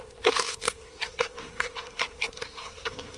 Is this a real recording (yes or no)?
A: no